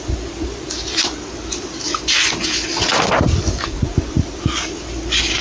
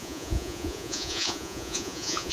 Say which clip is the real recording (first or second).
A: first